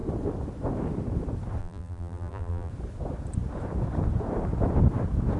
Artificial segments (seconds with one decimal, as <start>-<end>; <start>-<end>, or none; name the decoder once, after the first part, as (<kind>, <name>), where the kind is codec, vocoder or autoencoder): 1.6-2.7 (vocoder, BigVGAN v2)